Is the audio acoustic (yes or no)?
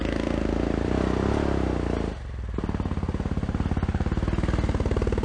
yes